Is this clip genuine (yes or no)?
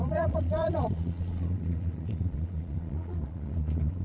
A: no